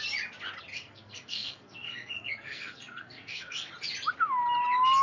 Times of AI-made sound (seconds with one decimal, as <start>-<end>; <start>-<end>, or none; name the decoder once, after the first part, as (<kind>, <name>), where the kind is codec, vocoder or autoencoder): 0.7-3.7 (codec, SNAC)